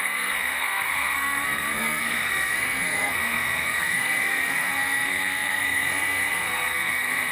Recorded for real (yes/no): no